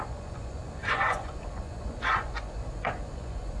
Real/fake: fake